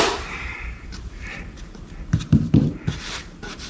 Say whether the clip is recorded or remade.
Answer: remade